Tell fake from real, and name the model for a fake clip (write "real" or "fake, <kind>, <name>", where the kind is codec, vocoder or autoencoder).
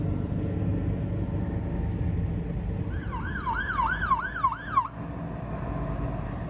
real